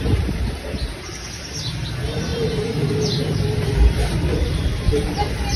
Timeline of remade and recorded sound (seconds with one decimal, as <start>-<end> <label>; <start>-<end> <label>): 0.0-2.3 recorded; 2.3-4.8 remade; 4.8-5.6 recorded